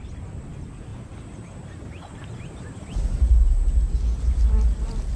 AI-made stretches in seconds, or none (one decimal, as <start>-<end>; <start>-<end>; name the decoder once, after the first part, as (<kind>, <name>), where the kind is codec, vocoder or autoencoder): none

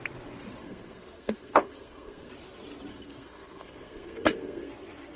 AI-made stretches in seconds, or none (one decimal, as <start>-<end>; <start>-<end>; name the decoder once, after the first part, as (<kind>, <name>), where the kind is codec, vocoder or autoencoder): 0.6-2.3 (codec, SNAC); 2.9-4.7

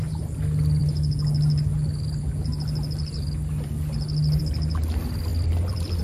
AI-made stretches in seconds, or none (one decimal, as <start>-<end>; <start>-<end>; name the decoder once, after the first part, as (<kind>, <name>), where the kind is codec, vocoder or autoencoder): 5.3-6.0 (vocoder, BigVGAN v2)

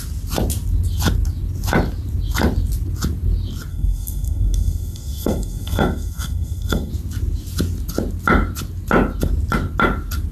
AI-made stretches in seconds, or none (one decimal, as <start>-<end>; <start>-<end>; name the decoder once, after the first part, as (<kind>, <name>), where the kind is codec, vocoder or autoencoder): 3.7-6.9 (codec, SNAC)

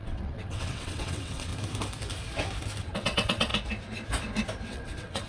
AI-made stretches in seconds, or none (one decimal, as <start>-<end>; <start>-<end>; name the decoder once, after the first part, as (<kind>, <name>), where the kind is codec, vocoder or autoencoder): 0.0-1.5 (vocoder, WaveNeXt); 2.8-3.5; 4.7-5.3